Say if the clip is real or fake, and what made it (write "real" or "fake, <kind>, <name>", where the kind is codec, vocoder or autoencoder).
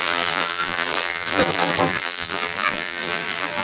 fake, vocoder, BigVGAN v2